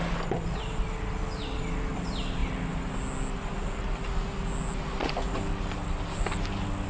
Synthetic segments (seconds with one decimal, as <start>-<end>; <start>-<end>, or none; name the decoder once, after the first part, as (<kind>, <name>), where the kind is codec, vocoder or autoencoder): none